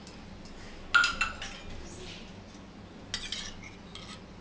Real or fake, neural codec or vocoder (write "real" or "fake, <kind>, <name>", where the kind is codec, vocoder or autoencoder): real